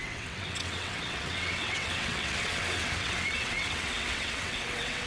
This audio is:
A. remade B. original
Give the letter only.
A